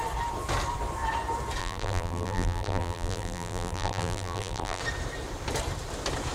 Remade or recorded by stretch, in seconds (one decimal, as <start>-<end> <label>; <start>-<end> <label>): 0.0-1.6 recorded; 1.6-4.8 remade; 4.8-6.3 recorded